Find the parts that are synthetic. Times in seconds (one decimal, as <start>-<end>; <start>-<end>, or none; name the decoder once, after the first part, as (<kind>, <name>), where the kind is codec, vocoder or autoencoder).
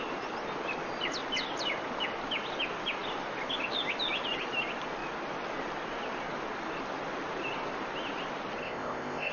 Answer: 8.6-9.3 (codec, ZipCodec)